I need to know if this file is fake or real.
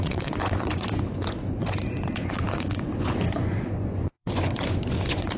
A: fake